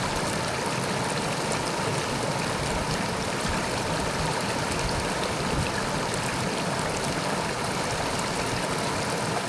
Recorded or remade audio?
recorded